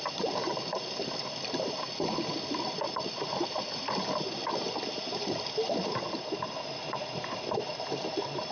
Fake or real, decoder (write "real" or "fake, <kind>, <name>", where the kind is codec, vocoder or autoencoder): real